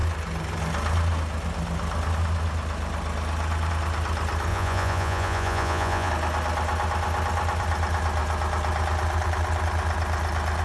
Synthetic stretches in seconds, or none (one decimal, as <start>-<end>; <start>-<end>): 4.5-6.1